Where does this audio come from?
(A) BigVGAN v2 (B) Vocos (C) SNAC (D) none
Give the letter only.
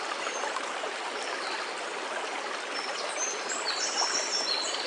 D